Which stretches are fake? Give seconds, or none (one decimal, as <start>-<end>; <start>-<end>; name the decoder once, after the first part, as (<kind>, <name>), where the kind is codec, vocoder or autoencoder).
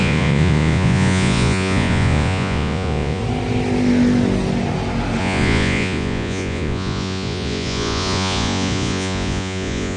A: 0.0-3.2 (vocoder, Vocos); 5.2-10.0